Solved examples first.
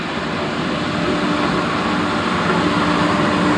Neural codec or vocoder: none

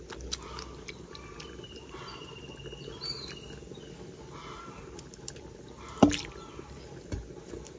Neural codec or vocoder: none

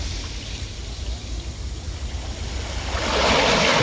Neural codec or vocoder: none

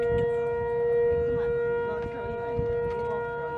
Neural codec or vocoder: none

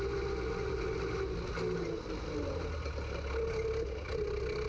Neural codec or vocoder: none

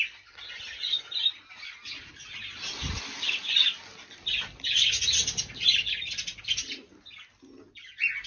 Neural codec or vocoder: none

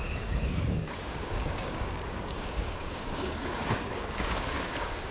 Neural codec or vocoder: codec, DAC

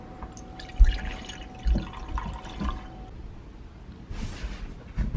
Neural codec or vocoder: none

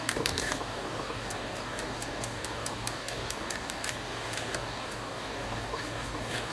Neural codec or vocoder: codec, DAC